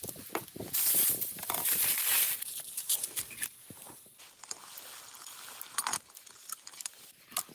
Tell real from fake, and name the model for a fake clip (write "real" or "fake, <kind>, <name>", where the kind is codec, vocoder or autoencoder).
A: real